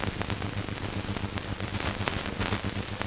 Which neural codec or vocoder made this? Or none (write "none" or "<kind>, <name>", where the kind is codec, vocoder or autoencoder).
none